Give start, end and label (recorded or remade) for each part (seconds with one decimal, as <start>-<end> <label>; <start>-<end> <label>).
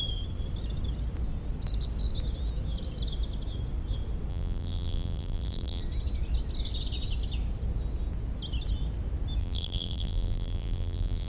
0.0-4.3 recorded; 4.3-5.8 remade; 5.8-9.4 recorded; 9.4-11.3 remade